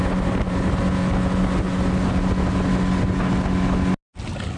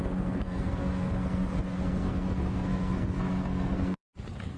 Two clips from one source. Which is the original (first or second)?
first